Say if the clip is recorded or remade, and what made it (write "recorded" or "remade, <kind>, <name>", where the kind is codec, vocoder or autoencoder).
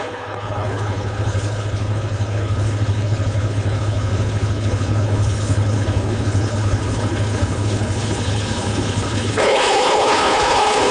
remade, codec, HILCodec